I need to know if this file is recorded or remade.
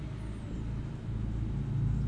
recorded